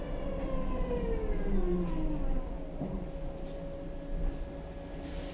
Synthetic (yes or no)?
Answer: no